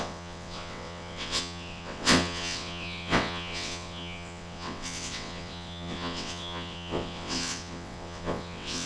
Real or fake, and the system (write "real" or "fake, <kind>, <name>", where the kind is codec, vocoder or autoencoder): fake, vocoder, WaveNeXt